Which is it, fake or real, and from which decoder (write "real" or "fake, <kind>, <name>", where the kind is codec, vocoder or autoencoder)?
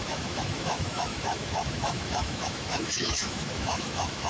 fake, autoencoder, DAC-VAE